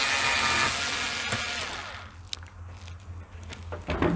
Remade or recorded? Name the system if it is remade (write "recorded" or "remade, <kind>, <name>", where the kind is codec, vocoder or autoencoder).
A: recorded